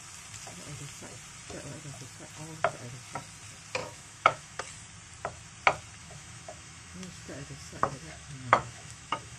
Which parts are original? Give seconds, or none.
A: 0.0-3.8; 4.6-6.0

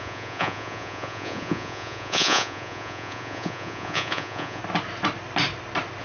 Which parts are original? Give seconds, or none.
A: 4.6-6.0

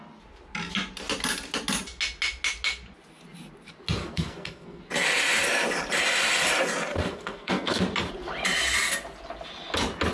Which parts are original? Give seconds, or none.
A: 0.0-4.0; 4.8-7.0; 7.8-10.1

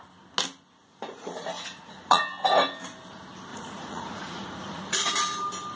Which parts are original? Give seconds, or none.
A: 0.0-0.8; 2.2-3.5; 5.1-5.8